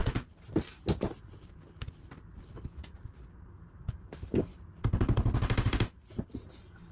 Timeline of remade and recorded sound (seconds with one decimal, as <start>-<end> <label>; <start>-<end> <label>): 0.0-3.5 recorded; 3.5-4.5 remade; 4.5-6.5 recorded; 6.5-6.9 remade